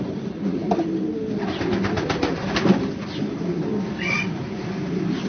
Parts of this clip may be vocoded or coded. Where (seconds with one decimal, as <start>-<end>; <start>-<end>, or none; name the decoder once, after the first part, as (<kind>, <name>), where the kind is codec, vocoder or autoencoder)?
0.0-5.3 (vocoder, BigVGAN v2)

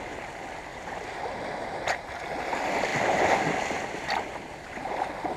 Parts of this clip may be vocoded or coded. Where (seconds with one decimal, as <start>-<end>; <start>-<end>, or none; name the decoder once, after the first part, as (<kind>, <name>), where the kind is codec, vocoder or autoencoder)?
0.7-2.1 (vocoder, BigVGAN v2)

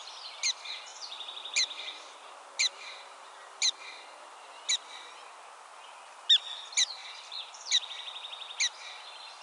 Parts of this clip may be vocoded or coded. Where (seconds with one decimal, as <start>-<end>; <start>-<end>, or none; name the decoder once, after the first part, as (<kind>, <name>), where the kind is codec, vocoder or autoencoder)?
0.9-3.8 (vocoder, BigVGAN v2); 7.0-7.8

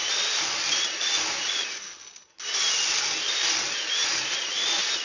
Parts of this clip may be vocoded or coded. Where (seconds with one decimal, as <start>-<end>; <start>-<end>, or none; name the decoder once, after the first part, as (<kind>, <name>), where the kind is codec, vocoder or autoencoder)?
none

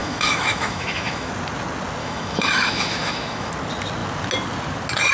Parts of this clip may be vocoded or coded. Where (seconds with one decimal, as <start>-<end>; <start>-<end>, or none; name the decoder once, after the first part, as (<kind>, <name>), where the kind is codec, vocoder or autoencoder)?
0.0-1.3 (autoencoder, DAC-VAE); 2.0-3.5

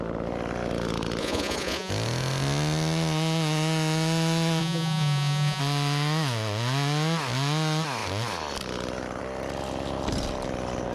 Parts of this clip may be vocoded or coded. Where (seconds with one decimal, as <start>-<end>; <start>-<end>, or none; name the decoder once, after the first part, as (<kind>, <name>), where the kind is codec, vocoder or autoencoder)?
1.2-1.9 (vocoder, Vocos); 4.6-5.6

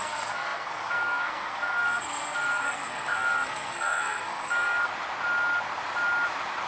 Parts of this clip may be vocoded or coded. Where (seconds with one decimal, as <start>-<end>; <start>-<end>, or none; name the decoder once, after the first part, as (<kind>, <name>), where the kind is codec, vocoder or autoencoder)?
0.0-4.9 (codec, SNAC)

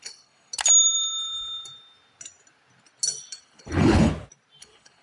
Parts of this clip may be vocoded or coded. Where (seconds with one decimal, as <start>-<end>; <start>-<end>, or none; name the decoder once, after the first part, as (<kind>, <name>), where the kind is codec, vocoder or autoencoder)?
0.0-0.5 (codec, HILCodec); 3.4-4.1; 4.6-5.0